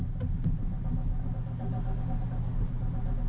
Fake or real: real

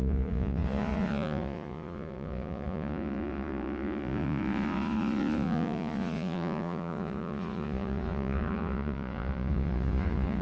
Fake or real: fake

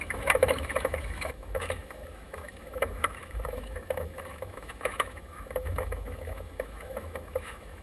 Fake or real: fake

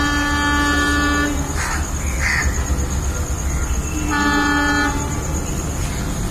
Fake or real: real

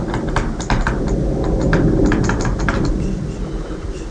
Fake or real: real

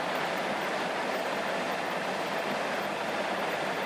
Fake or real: real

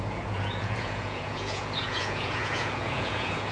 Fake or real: fake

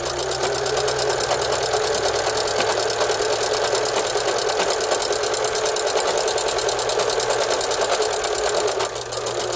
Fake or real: real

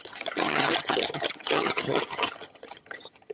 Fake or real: fake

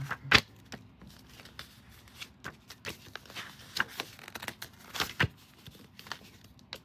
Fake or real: real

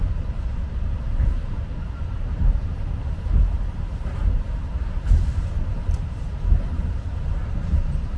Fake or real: fake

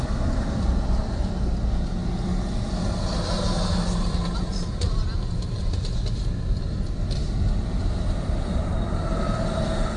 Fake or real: real